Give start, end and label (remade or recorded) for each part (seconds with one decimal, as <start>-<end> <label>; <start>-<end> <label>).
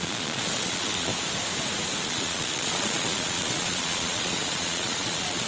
0.0-1.1 remade; 1.1-2.0 recorded; 2.0-5.5 remade